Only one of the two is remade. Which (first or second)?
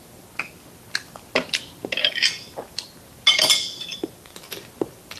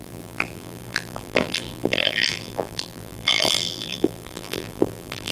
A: second